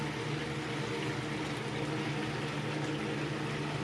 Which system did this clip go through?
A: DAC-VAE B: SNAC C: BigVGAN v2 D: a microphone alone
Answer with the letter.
D